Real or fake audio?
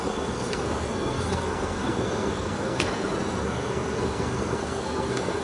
fake